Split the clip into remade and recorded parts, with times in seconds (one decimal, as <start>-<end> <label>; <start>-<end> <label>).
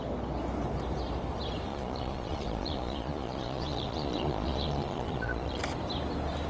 0.0-1.7 recorded; 1.7-5.6 remade; 5.6-6.5 recorded